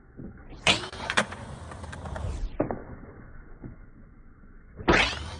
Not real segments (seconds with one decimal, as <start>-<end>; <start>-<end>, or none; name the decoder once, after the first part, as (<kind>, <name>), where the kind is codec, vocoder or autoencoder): 0.4-1.6 (vocoder, Vocos); 2.8-4.7